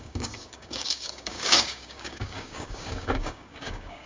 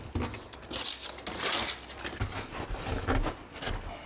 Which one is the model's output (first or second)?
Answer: first